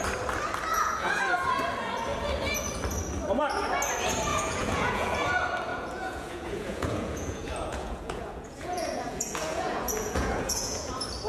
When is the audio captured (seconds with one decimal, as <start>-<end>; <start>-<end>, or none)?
0.0-0.7; 1.2-4.3; 5.2-5.7; 10.9-11.3